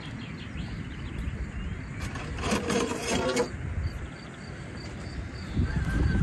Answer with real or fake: real